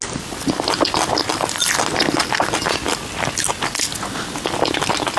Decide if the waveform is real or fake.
real